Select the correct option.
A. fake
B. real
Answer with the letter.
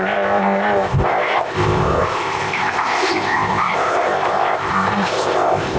A